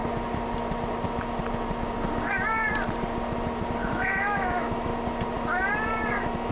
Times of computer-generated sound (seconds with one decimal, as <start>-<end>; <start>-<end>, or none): 3.9-4.9; 6.1-6.5